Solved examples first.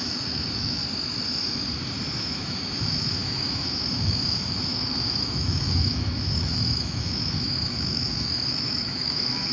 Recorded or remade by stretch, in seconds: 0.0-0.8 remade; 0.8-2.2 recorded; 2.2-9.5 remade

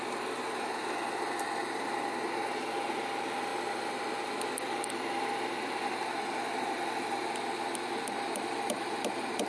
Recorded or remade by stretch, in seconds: 0.0-9.5 recorded